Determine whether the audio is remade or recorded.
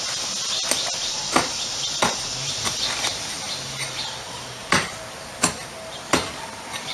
recorded